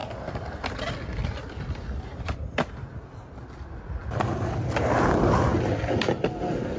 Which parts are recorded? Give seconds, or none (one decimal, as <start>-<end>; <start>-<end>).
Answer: 0.0-2.1; 2.9-6.8